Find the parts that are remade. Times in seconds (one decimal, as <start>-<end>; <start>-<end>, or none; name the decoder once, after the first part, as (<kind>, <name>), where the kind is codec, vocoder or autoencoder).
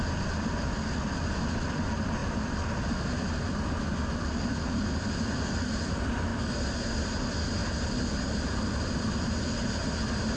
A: 6.3-7.1 (vocoder, BigVGAN v2); 7.6-8.5